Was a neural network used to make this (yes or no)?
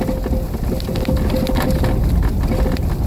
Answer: no